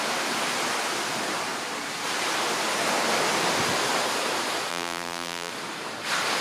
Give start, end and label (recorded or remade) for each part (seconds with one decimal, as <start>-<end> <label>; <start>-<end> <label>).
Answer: 0.0-4.7 recorded; 4.7-5.5 remade; 5.5-6.4 recorded